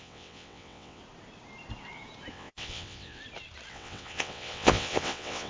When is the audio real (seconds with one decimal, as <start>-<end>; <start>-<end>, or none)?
1.0-2.3; 3.2-3.7